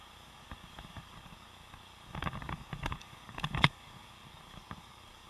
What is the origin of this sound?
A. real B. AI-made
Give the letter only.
B